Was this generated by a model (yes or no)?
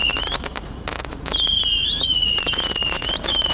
yes